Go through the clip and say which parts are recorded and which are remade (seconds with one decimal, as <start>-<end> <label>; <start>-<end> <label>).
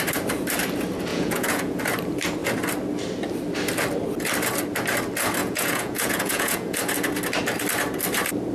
0.0-1.1 recorded; 1.1-1.8 remade; 1.8-5.4 recorded; 5.4-6.8 remade; 6.8-8.5 recorded